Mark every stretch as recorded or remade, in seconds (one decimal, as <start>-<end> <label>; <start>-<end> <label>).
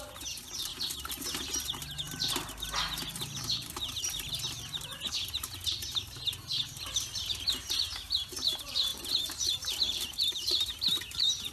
0.0-0.7 remade; 0.7-3.2 recorded; 3.2-4.9 remade; 4.9-6.6 recorded; 6.6-11.5 remade